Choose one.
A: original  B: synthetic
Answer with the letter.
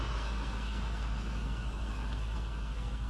B